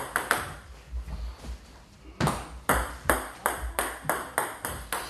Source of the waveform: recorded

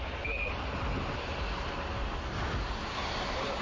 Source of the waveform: recorded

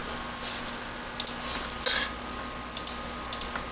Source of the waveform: recorded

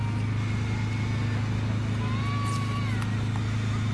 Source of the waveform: recorded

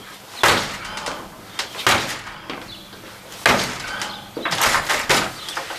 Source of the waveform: recorded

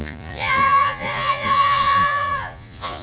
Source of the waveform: remade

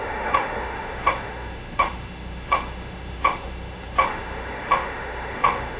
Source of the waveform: remade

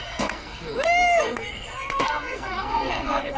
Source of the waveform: remade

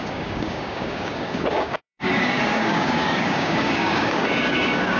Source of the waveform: remade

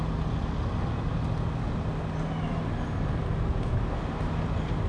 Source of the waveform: recorded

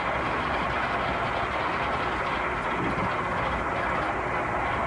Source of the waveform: recorded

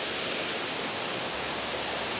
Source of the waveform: recorded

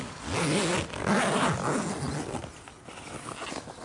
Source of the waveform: recorded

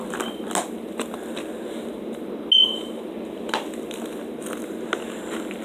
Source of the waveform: recorded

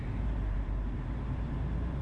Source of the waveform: remade